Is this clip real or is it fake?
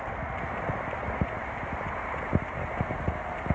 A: real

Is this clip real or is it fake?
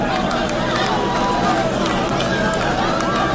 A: real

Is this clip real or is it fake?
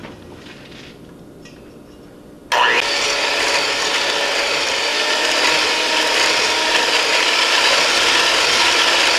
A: real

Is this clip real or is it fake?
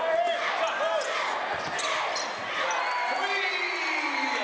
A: real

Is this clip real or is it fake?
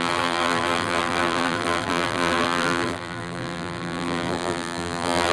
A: fake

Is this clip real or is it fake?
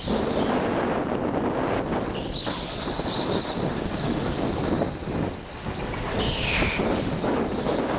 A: real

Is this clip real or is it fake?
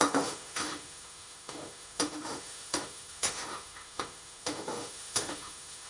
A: fake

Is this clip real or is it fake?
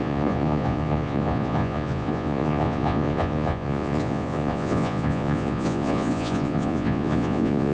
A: fake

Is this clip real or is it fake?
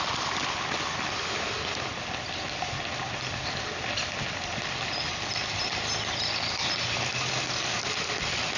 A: real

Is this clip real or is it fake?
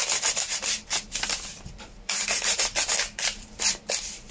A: fake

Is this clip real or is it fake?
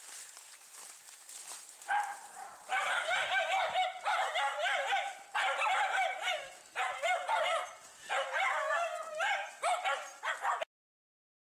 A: fake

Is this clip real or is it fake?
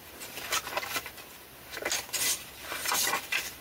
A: fake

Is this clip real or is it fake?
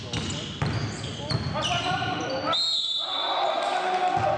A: real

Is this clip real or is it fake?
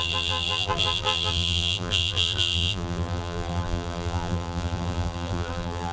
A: fake